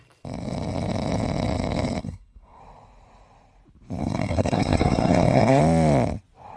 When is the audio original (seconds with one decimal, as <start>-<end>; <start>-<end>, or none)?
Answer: 0.0-2.0; 2.6-4.0; 5.6-6.6